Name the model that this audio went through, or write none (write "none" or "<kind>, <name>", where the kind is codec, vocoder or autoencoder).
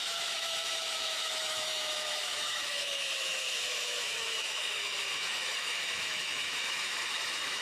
autoencoder, DAC-VAE